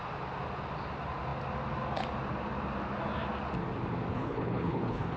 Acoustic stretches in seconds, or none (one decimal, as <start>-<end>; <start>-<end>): 0.0-4.1